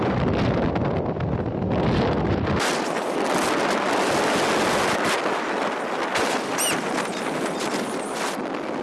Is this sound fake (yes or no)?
no